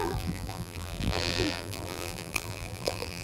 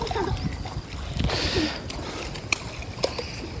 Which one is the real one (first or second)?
second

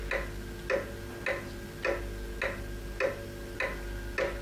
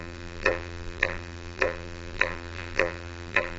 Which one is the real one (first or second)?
first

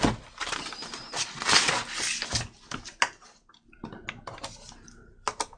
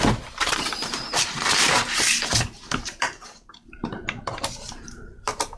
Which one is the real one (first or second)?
first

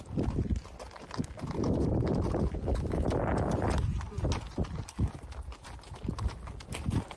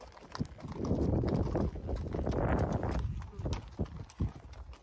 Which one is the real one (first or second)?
second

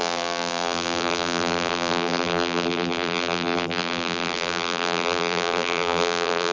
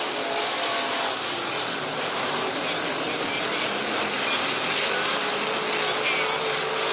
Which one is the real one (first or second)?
second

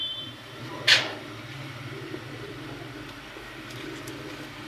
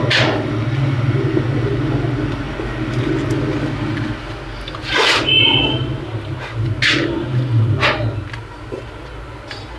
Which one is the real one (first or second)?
second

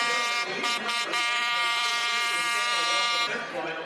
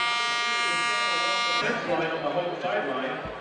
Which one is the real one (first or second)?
second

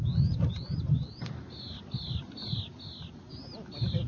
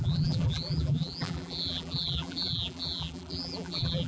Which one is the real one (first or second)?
first